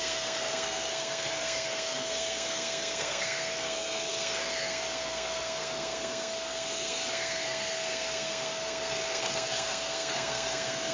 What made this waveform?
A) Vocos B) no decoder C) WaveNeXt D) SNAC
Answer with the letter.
D